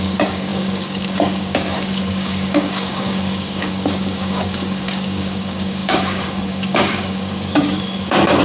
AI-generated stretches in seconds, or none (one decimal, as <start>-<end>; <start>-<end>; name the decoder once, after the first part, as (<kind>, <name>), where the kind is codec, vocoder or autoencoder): 0.0-8.4 (codec, DAC)